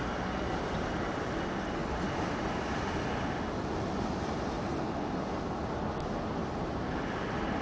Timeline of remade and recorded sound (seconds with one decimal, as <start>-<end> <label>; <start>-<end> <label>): 0.0-7.6 recorded